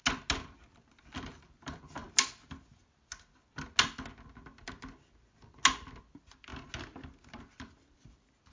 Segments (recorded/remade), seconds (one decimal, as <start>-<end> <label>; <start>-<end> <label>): 0.0-0.7 recorded; 0.7-2.0 remade; 2.0-6.0 recorded; 6.0-6.5 remade; 6.5-7.4 recorded; 7.4-8.5 remade